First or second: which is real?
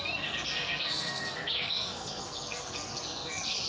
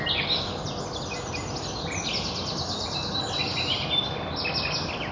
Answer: second